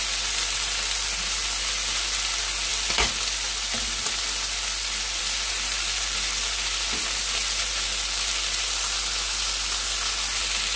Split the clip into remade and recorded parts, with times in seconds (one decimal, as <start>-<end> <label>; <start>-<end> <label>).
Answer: 0.0-10.8 recorded